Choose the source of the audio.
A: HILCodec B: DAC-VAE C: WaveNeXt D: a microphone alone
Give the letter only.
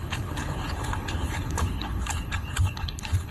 A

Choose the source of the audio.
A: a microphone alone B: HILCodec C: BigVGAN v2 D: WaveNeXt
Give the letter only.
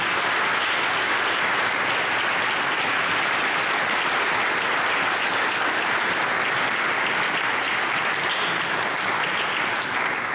A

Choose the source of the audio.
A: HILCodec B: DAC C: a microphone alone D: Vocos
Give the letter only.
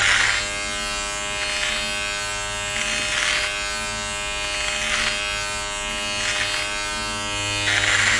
C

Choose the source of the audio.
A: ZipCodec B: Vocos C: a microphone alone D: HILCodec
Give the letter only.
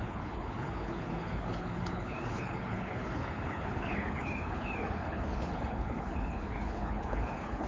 D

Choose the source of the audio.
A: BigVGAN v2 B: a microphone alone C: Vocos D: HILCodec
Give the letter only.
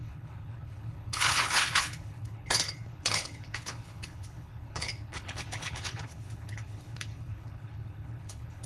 D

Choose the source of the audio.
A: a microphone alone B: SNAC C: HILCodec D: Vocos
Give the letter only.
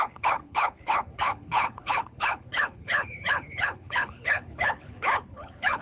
C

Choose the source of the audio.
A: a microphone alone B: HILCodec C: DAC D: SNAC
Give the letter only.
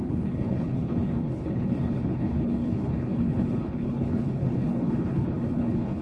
B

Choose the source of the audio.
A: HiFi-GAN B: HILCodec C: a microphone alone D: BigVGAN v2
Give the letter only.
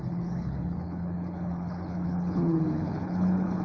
B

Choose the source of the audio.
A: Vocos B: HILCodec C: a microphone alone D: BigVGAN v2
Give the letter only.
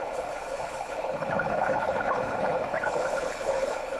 B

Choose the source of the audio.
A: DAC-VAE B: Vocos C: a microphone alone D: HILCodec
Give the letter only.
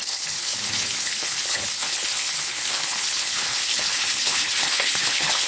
D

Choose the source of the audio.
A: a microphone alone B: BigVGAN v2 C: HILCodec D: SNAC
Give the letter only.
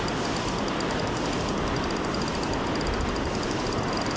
A